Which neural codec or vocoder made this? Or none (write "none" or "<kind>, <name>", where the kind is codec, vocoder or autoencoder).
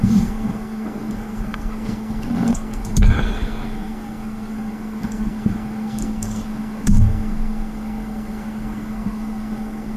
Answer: codec, SNAC